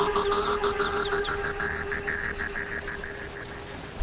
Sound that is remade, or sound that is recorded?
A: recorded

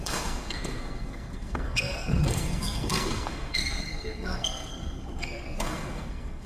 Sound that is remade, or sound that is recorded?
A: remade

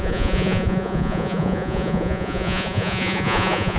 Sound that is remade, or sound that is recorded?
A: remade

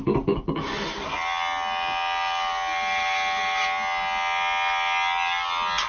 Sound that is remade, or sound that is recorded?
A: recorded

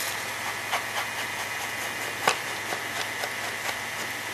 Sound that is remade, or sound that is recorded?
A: recorded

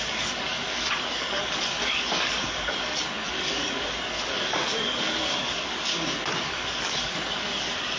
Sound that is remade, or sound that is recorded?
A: remade